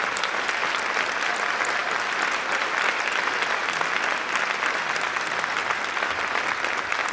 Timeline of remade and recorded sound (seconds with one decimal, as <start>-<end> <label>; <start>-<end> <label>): 0.0-7.1 recorded